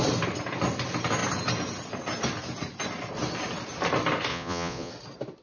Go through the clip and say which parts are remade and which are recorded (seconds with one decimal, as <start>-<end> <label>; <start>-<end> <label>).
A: 0.0-4.3 recorded; 4.3-4.9 remade; 4.9-5.4 recorded